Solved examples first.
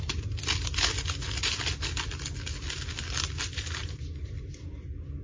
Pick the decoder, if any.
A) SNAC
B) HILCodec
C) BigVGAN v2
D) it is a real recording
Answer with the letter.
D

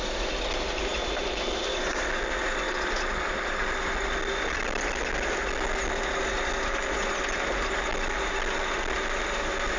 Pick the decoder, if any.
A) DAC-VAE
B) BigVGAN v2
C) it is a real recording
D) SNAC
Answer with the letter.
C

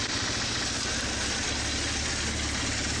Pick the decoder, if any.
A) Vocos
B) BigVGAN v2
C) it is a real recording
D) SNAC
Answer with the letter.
C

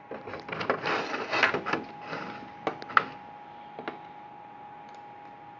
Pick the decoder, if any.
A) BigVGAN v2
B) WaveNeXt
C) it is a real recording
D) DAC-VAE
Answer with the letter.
C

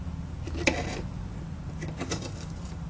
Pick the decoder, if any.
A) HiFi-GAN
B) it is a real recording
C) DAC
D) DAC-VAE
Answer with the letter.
B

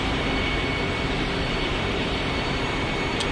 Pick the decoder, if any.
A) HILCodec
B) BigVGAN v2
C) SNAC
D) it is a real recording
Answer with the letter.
B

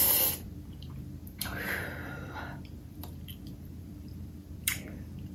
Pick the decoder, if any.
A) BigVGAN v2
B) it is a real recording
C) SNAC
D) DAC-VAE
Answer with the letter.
A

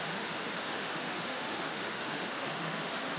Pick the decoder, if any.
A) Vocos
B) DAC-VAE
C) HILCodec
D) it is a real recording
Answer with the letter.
B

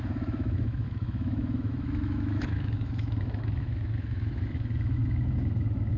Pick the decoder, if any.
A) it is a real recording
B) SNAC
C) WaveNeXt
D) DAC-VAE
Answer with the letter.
D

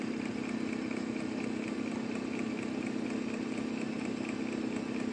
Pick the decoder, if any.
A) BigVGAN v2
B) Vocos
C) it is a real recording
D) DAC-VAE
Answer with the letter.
C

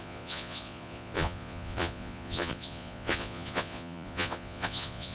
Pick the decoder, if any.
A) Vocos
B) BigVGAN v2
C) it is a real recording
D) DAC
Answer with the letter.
A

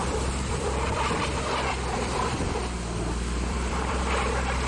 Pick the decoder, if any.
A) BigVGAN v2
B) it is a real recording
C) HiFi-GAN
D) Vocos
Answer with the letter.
A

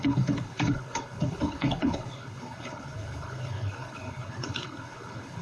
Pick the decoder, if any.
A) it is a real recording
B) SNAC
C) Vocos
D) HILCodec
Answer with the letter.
D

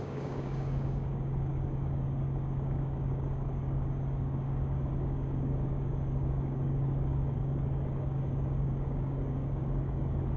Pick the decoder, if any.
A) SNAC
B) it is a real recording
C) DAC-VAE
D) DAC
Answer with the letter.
D